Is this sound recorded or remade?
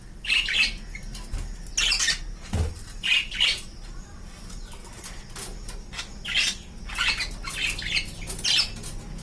recorded